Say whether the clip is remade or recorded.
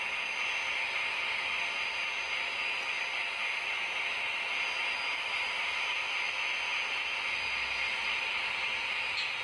recorded